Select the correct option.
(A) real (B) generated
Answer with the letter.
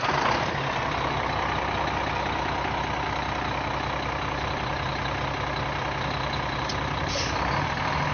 A